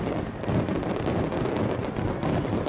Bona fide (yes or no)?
yes